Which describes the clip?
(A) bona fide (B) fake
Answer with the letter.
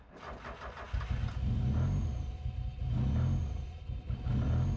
A